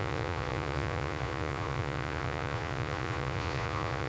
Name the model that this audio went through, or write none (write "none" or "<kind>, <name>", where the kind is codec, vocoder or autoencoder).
vocoder, Vocos